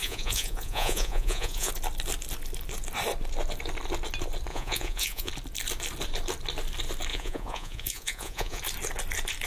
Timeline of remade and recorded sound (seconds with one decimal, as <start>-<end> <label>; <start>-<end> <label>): 0.0-1.7 remade; 1.7-4.5 recorded; 4.5-5.3 remade; 5.3-7.1 recorded; 7.1-8.6 remade; 8.6-9.5 recorded

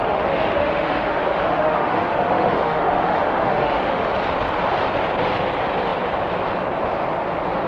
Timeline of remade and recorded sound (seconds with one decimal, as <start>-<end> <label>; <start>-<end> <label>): 0.0-4.1 remade; 4.1-7.7 recorded

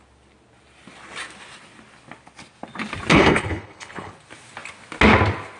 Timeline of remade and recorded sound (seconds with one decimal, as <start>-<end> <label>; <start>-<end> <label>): 0.0-3.1 recorded; 3.1-4.1 remade; 4.1-5.6 recorded

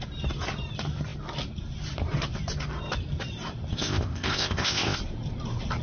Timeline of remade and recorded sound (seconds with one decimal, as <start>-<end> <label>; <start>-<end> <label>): 0.0-3.7 recorded; 3.7-5.0 remade; 5.0-5.8 recorded

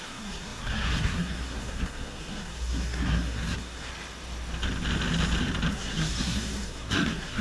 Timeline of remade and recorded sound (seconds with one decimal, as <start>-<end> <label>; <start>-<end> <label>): 0.0-3.9 remade; 3.9-5.7 recorded; 5.7-7.4 remade